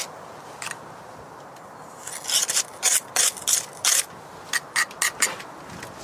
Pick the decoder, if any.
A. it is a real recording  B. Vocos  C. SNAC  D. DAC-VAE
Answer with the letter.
A